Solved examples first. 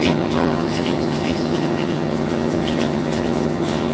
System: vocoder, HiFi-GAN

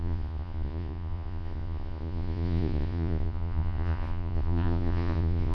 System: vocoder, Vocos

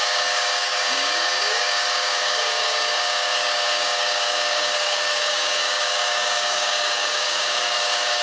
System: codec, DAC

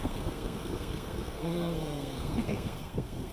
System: codec, SNAC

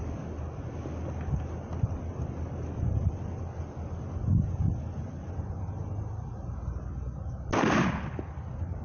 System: none